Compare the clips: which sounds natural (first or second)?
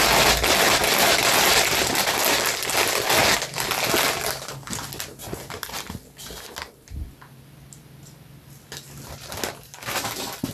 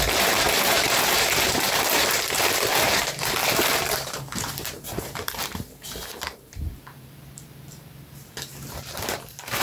first